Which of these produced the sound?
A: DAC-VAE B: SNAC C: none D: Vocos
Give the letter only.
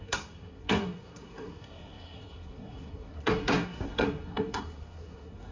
B